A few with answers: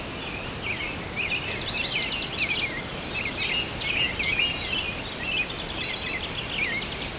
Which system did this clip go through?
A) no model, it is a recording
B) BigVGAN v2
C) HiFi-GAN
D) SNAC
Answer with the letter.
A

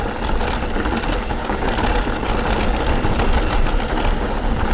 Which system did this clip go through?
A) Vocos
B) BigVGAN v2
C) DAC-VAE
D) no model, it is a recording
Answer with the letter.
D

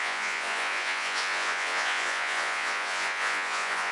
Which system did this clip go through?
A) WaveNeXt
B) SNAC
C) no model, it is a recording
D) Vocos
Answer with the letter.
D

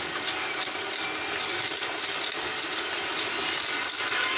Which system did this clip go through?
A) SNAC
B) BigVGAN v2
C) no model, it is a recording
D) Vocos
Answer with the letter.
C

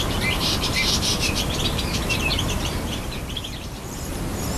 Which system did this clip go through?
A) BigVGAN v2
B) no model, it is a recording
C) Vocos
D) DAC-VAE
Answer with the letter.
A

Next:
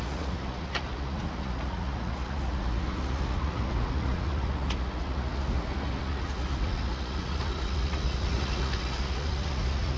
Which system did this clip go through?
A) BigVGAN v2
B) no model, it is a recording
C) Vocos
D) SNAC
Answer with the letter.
C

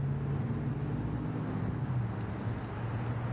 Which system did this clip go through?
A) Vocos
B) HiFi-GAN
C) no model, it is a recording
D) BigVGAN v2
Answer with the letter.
C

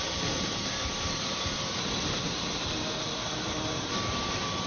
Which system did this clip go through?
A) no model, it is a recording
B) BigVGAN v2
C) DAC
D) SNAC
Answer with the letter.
B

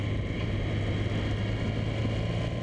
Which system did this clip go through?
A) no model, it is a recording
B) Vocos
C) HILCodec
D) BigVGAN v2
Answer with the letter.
A